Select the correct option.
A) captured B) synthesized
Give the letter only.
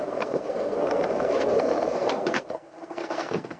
B